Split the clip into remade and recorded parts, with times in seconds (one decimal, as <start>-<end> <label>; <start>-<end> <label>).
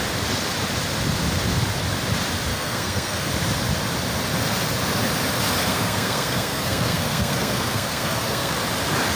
0.0-2.5 recorded; 2.5-3.3 remade; 3.3-5.7 recorded; 5.7-8.6 remade; 8.6-9.2 recorded